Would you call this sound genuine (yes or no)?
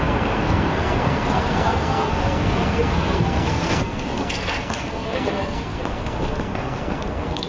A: no